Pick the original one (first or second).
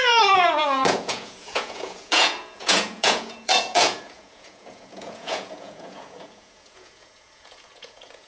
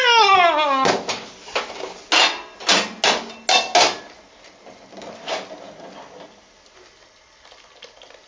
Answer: second